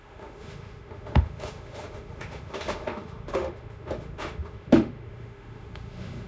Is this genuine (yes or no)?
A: no